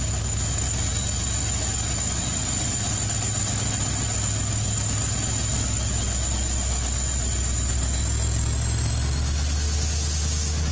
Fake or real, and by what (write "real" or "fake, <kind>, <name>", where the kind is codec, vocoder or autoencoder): real